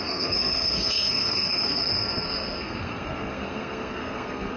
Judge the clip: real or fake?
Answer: fake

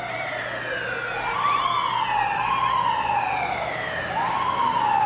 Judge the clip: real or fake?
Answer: real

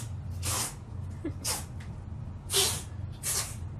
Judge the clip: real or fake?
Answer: real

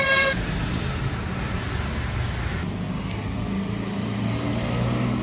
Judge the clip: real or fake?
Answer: real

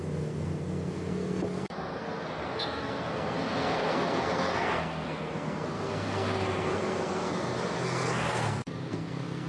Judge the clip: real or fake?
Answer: fake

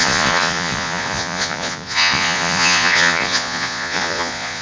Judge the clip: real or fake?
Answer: fake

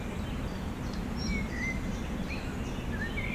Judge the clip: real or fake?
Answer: real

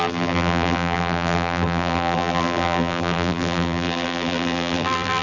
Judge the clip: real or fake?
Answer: fake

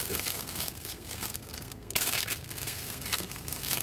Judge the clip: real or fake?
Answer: fake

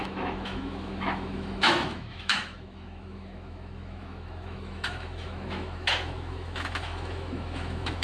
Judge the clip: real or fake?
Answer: fake